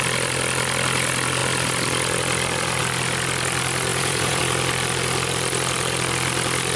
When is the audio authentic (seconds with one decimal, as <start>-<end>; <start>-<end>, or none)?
0.0-3.9; 4.4-6.8

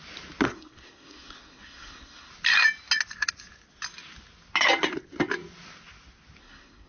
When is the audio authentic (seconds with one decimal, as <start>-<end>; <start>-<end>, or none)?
0.0-0.5; 2.3-6.4